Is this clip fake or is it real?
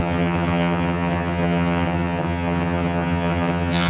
fake